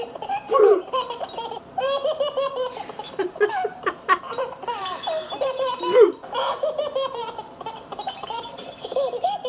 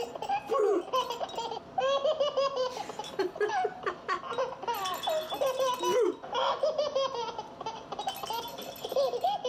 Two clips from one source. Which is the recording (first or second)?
second